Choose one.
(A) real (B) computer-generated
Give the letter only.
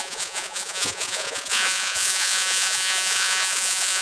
B